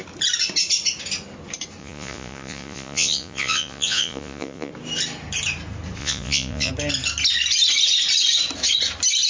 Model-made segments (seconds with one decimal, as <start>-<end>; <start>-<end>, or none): 1.8-4.7; 6.0-6.7